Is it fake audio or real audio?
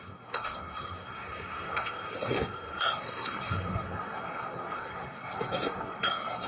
fake